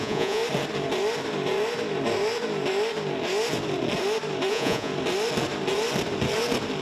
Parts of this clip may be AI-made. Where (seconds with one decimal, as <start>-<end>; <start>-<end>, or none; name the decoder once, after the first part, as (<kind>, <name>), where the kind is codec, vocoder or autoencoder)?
0.0-0.4 (vocoder, Vocos); 4.5-4.9